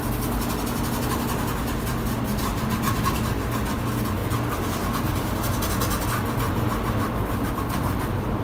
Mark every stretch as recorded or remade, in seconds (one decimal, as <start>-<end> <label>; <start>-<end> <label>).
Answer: 0.0-8.4 recorded